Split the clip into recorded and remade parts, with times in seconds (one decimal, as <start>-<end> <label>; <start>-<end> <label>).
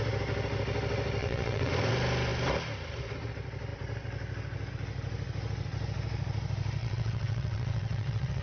0.0-1.2 recorded; 1.2-1.7 remade; 1.7-6.8 recorded; 6.8-8.4 remade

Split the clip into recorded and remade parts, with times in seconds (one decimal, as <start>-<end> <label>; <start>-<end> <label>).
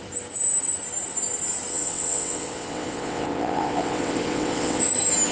0.0-1.7 recorded; 1.7-4.8 remade; 4.8-5.3 recorded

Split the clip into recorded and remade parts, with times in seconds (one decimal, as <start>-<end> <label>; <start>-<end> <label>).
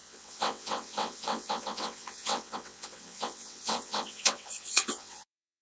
0.0-5.6 remade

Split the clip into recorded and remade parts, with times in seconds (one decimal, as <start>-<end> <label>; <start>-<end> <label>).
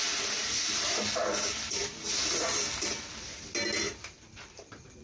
0.0-5.0 recorded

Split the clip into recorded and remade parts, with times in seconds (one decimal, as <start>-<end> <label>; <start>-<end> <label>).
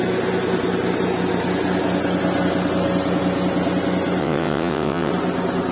0.0-4.2 recorded; 4.2-5.1 remade; 5.1-5.7 recorded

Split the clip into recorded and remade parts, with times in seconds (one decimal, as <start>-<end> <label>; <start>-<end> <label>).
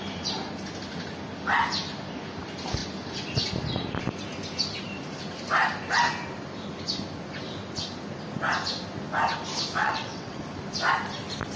0.0-9.8 recorded; 9.8-10.4 remade; 10.4-11.6 recorded